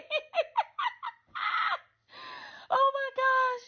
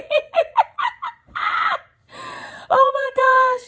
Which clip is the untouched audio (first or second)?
first